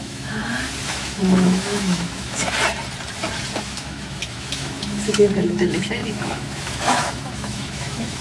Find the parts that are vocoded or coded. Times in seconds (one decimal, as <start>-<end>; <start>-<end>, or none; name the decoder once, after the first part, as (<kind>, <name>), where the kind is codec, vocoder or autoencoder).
0.0-0.4 (autoencoder, DAC-VAE); 0.9-2.4; 3.6-8.2